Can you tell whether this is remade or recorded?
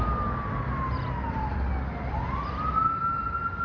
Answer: recorded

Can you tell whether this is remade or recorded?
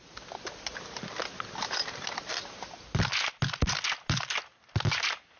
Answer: recorded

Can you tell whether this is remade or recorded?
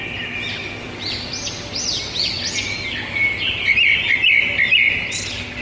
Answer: recorded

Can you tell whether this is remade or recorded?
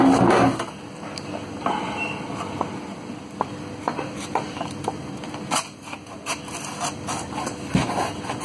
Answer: recorded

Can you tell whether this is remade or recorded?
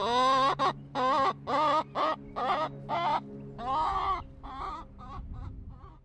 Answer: recorded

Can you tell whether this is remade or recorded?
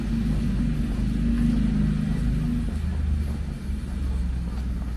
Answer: recorded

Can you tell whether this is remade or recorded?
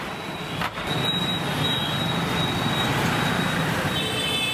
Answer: recorded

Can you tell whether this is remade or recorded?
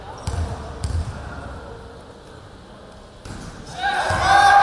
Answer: recorded